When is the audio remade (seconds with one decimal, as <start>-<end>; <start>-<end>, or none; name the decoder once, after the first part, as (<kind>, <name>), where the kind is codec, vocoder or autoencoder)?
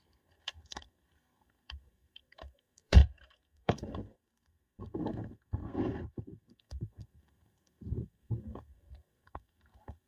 0.0-10.1 (codec, SNAC)